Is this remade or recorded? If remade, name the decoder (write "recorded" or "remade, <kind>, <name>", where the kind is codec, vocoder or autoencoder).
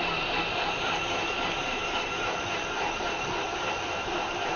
remade, vocoder, BigVGAN v2